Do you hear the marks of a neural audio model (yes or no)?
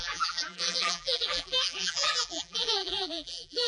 yes